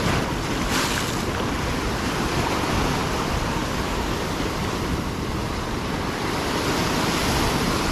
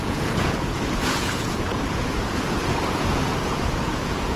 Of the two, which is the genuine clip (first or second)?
first